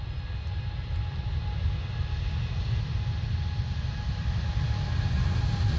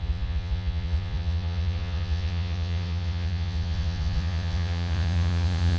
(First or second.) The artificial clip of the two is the second